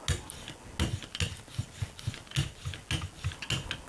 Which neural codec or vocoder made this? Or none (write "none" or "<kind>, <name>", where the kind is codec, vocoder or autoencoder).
none